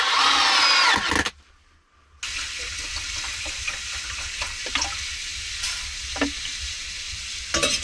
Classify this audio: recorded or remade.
recorded